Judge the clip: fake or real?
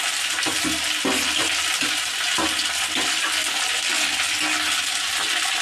real